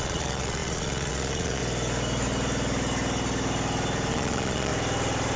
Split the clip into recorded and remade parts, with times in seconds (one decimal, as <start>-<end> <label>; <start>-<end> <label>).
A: 0.0-1.6 remade; 1.6-4.1 recorded; 4.1-4.7 remade; 4.7-5.4 recorded